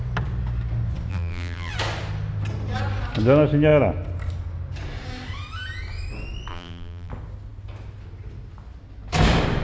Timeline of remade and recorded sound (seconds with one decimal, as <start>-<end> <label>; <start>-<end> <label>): 0.0-1.1 recorded; 1.1-1.7 remade; 1.7-6.5 recorded; 6.5-7.1 remade; 7.1-9.6 recorded